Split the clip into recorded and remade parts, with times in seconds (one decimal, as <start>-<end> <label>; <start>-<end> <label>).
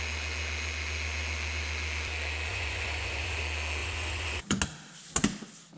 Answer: 0.0-2.5 recorded; 2.5-3.4 remade; 3.4-3.8 recorded; 3.8-4.6 remade; 4.6-5.8 recorded